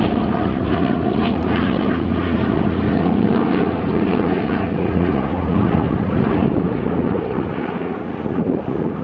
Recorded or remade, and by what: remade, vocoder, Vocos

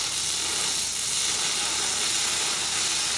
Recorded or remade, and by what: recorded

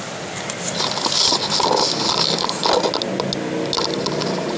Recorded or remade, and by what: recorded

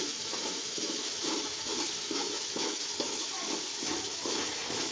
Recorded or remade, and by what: remade, autoencoder, DAC-VAE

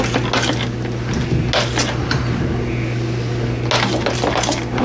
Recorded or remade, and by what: recorded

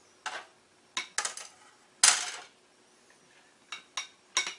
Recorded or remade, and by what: recorded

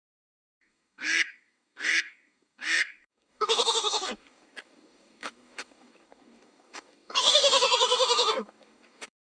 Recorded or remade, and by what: remade, codec, DAC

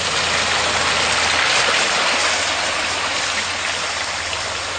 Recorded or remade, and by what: recorded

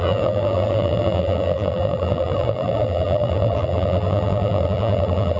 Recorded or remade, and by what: remade, vocoder, BigVGAN v2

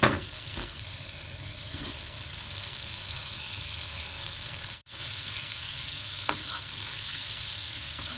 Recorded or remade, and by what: remade, codec, SNAC